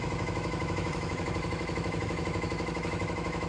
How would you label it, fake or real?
fake